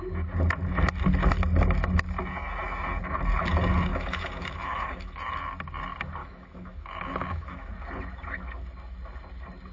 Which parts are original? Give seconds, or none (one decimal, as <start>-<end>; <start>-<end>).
0.0-3.9; 5.3-6.2; 7.7-9.7